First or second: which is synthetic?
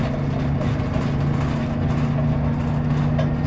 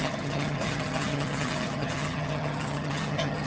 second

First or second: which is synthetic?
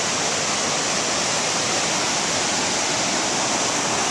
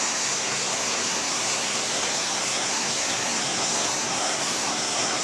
second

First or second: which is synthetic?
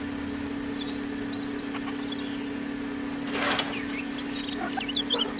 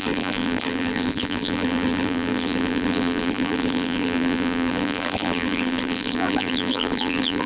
second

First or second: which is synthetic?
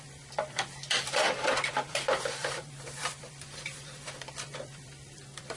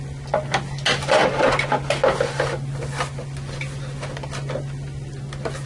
first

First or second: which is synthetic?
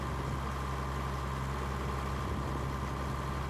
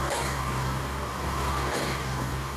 second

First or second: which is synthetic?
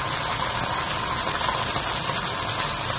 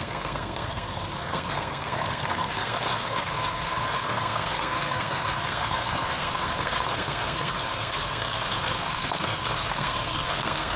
second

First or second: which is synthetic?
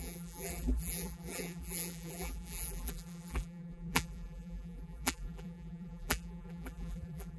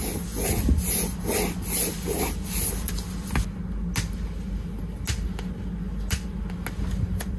first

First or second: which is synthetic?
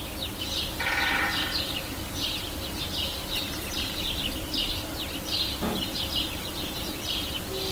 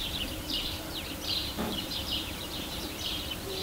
second